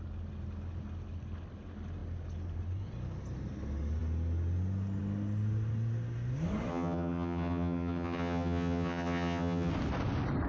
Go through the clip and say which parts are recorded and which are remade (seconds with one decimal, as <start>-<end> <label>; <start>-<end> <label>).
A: 0.0-6.7 recorded; 6.7-9.7 remade; 9.7-10.5 recorded